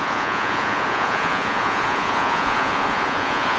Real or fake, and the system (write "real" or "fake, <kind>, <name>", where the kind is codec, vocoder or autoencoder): fake, vocoder, Vocos